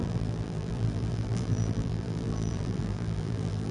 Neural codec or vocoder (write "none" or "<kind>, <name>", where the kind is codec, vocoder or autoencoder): vocoder, BigVGAN v2